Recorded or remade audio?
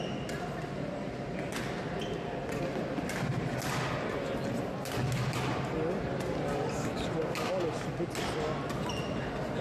recorded